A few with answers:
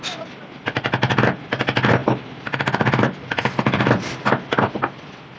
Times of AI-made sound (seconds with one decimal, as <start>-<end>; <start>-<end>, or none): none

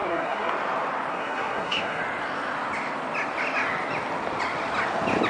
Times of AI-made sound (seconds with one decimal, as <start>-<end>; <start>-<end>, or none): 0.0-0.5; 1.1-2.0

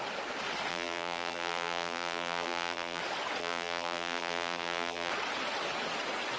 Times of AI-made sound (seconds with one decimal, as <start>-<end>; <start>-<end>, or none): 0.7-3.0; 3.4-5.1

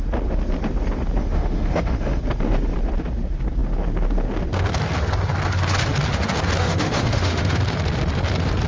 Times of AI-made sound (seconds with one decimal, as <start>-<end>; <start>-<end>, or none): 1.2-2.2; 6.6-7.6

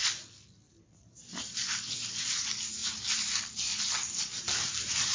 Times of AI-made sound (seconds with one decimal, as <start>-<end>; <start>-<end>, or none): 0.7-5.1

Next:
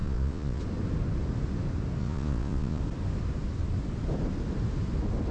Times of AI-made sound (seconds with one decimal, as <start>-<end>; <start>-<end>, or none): 0.0-0.6; 2.0-2.8

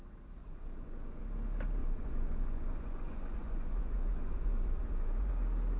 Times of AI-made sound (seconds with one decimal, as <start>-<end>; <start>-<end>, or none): 0.4-1.2; 1.8-5.3